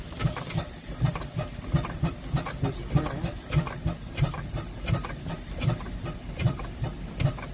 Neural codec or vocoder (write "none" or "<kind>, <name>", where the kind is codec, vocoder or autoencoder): vocoder, BigVGAN v2